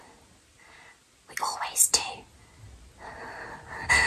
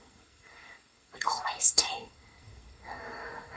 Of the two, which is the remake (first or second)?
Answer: second